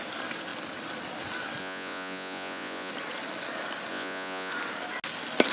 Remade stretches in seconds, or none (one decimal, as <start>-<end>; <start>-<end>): 1.6-2.9; 3.9-4.5